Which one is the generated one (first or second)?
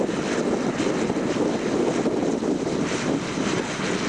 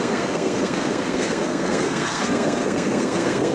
second